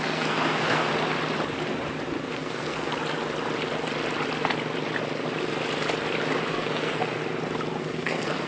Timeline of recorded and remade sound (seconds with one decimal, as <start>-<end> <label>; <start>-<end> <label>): 0.0-0.9 remade; 0.9-2.3 recorded; 2.3-2.9 remade; 2.9-6.5 recorded; 6.5-7.2 remade; 7.2-7.8 recorded; 7.8-8.5 remade